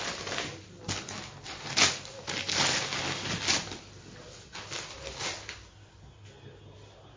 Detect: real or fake real